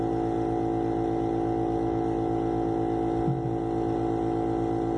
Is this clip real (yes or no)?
yes